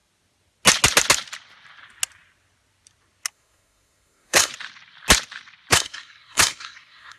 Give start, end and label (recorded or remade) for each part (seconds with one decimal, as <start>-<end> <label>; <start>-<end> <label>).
0.0-3.3 recorded; 3.3-4.5 remade; 4.5-5.7 recorded; 5.7-7.2 remade